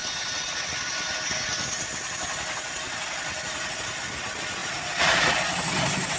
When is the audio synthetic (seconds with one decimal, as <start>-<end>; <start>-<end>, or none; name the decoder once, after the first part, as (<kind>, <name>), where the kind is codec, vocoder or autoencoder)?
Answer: 4.6-5.3 (vocoder, Vocos)